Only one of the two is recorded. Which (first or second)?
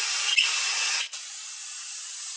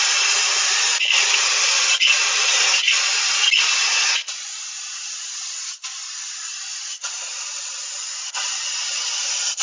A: first